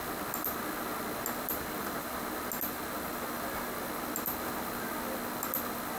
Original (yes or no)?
yes